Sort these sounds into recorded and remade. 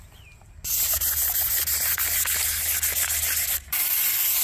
recorded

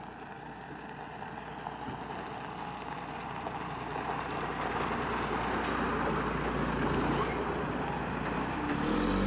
recorded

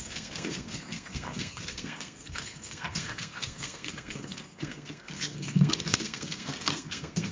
remade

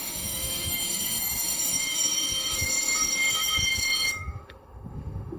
remade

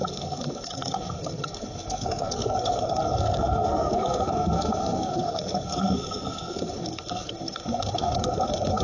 remade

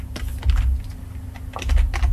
recorded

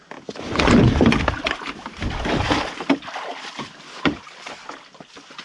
recorded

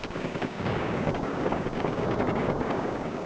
remade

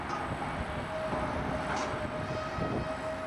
recorded